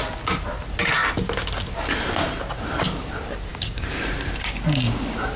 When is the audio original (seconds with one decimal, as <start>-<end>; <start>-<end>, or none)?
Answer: 0.0-3.5; 4.0-5.4